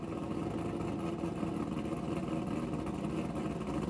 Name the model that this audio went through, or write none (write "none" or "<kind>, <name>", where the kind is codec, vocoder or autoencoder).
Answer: none